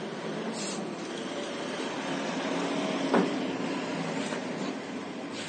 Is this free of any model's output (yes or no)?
no